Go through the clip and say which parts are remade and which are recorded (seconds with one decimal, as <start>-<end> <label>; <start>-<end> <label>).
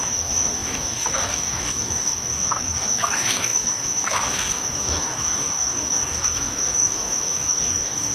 0.0-8.1 remade